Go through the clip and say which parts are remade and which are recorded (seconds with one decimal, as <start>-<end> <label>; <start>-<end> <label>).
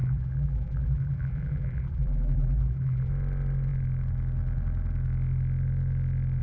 0.0-3.1 remade; 3.1-6.4 recorded